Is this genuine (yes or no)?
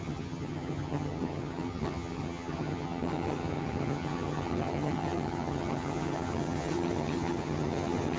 no